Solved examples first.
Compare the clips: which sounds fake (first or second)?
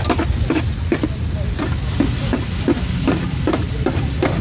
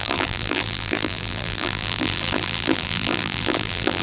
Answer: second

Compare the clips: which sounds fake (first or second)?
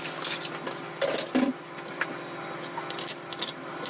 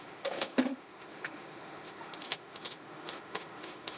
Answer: second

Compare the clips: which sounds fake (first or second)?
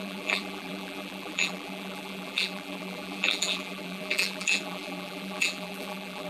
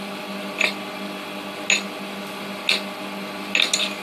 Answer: first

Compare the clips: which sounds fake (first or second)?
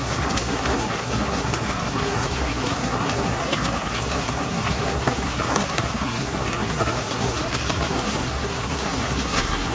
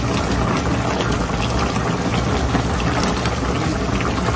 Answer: first